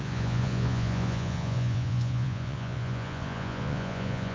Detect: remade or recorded remade